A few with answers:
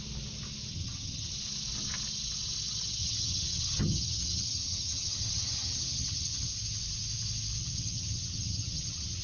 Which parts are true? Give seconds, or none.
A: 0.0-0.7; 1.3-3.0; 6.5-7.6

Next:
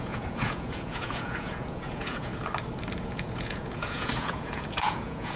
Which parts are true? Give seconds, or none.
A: 2.3-3.0